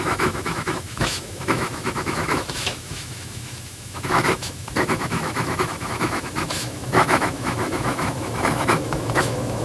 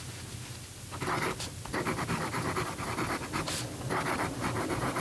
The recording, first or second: second